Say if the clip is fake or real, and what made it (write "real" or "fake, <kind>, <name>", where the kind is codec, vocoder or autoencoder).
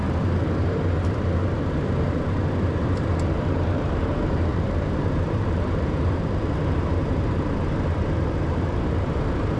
fake, vocoder, BigVGAN v2